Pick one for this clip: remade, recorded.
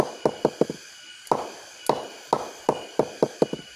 recorded